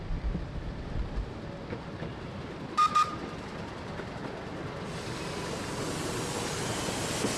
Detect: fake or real real